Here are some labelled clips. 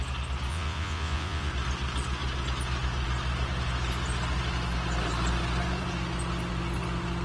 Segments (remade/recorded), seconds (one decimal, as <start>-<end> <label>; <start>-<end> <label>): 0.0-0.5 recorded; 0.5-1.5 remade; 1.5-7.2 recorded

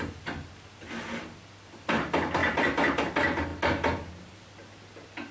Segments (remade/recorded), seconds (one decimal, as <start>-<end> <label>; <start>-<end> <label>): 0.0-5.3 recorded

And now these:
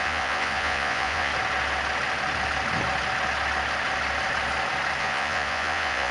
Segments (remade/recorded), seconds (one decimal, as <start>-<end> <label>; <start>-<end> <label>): 0.0-1.3 remade; 1.3-5.0 recorded; 5.0-6.1 remade

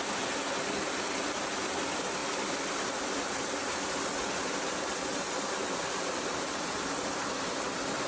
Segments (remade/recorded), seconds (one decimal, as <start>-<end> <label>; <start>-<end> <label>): 0.0-8.1 recorded

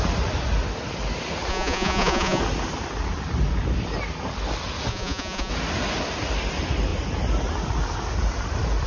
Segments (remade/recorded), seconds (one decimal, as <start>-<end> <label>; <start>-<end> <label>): 0.0-1.5 recorded; 1.5-2.4 remade; 2.4-4.9 recorded; 4.9-5.5 remade; 5.5-8.9 recorded

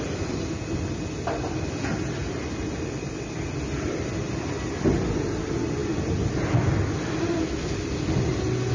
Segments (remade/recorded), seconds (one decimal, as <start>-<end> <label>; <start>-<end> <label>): 0.0-8.7 recorded

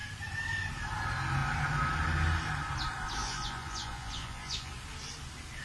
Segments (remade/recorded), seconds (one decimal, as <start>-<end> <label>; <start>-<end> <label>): 0.0-3.2 recorded; 3.2-4.7 remade; 4.7-5.6 recorded